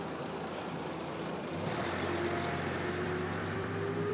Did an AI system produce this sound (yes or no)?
yes